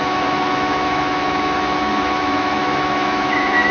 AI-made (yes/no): yes